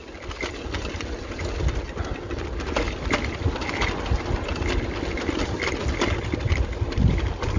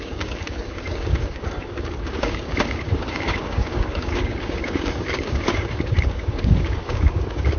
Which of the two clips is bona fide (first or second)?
first